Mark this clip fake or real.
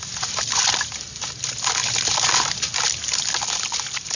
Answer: real